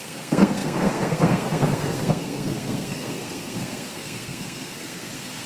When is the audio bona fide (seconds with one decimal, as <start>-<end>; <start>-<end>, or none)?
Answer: none